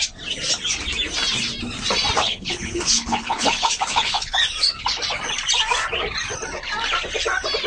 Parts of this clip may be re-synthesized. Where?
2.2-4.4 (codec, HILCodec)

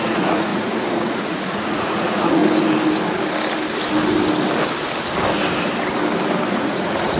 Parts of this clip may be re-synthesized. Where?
0.0-2.4 (vocoder, Vocos); 6.5-7.2

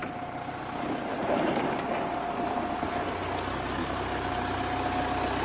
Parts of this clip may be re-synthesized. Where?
0.0-0.6 (vocoder, BigVGAN v2); 1.1-1.8; 3.8-4.3

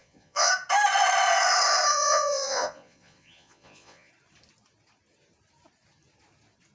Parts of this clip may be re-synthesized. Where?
0.0-0.5 (vocoder, Vocos); 1.9-4.1

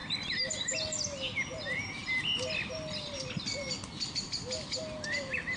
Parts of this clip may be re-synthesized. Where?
1.5-2.0 (vocoder, BigVGAN v2)

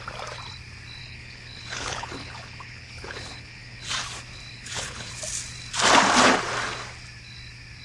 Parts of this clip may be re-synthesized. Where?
1.0-3.9 (codec, HILCodec); 4.5-5.1

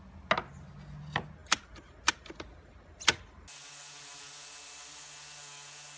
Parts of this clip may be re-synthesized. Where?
none